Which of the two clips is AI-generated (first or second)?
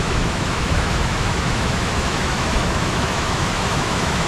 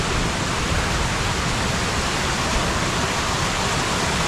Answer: first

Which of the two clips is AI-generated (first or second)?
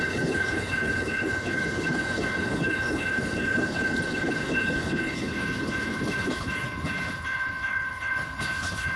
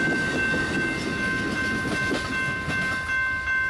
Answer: first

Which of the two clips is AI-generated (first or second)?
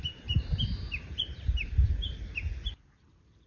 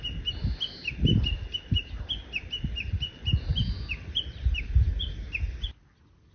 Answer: first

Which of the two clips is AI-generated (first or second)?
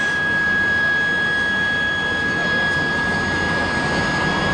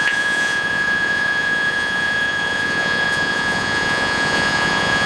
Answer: second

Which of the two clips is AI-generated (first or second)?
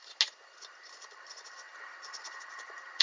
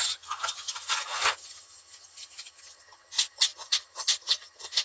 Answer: second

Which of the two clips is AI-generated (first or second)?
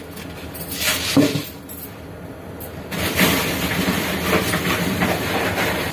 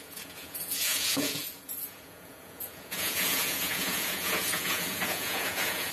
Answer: second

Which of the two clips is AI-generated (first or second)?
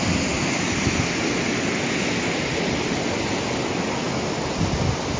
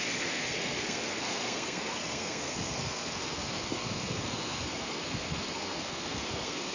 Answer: second